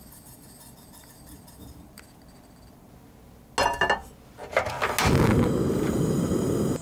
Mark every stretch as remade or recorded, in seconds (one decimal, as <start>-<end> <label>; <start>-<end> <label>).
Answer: 0.0-6.8 recorded